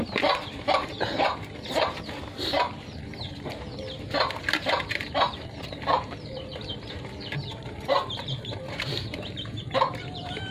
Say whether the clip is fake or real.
fake